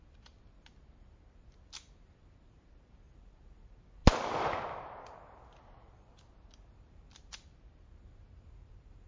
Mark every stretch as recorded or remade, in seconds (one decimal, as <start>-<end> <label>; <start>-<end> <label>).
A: 0.0-9.1 recorded